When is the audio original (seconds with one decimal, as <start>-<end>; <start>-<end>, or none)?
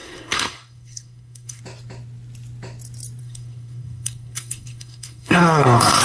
1.6-3.2